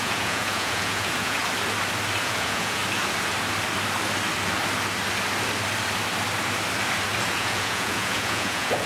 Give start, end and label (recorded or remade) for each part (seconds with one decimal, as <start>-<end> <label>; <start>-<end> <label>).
0.0-1.4 remade; 1.4-2.2 recorded; 2.2-2.8 remade; 2.8-7.3 recorded; 7.3-8.9 remade